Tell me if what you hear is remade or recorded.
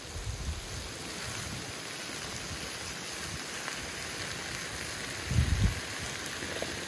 recorded